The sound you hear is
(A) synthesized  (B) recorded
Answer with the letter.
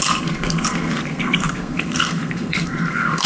A